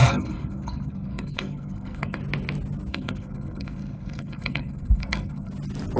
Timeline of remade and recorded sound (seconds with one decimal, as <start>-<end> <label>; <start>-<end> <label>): 0.0-2.2 remade; 2.2-2.9 recorded; 2.9-5.5 remade; 5.5-6.0 recorded